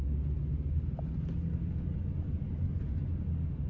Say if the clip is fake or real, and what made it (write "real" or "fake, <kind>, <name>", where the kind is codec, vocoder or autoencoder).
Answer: real